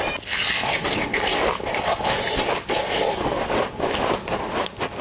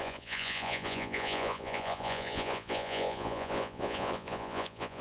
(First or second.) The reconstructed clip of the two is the second